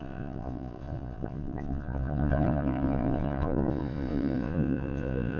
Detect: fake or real fake